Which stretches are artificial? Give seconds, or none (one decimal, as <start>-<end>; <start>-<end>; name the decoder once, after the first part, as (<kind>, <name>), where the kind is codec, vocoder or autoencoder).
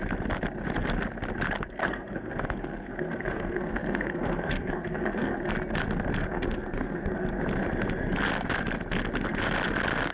1.8-5.4 (codec, SNAC); 6.2-7.4